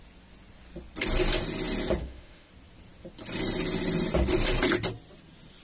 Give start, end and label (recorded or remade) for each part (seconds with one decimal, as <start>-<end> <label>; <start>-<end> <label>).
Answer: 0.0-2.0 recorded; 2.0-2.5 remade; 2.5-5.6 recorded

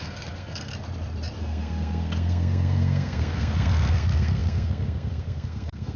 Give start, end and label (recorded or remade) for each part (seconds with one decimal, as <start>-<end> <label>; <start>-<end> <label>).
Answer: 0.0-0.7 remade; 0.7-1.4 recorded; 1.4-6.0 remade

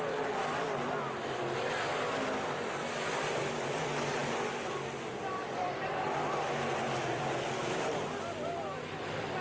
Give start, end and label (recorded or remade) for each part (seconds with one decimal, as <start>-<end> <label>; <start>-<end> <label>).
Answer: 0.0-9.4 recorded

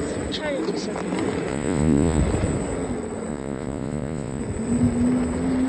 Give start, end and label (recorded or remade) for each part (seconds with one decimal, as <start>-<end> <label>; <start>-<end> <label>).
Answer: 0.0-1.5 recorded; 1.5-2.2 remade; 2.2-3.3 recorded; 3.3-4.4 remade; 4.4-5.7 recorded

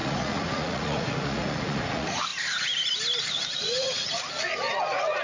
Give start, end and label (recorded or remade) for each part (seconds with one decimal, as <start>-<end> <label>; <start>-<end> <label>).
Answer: 0.0-2.3 remade; 2.3-3.2 recorded; 3.2-5.2 remade

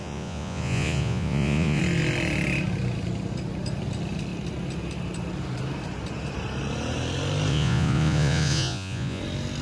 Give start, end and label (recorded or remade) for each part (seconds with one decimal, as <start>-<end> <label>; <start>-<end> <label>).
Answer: 0.0-1.8 remade; 1.8-7.5 recorded; 7.5-9.2 remade; 9.2-9.6 recorded

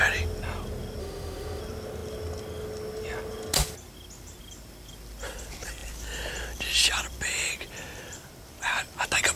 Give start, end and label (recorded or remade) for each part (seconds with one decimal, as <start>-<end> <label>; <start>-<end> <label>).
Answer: 0.0-1.0 recorded; 1.0-1.6 remade; 1.6-9.4 recorded

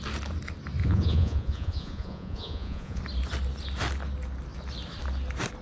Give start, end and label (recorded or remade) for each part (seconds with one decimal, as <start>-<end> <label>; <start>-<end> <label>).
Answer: 0.0-0.8 recorded; 0.8-3.0 remade; 3.0-5.6 recorded